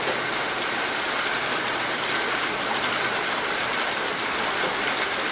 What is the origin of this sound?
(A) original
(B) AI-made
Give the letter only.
A